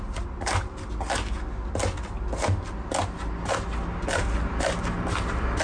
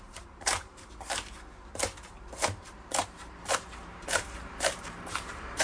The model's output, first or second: second